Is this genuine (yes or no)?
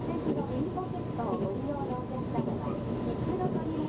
yes